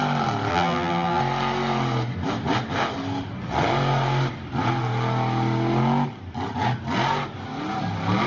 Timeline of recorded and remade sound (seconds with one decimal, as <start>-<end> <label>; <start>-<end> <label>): 0.0-0.5 recorded; 0.5-1.2 remade; 1.2-8.3 recorded